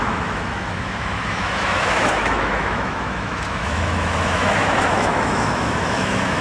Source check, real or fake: fake